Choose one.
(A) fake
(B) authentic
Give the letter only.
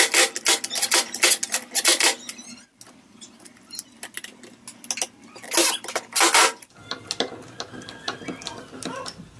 B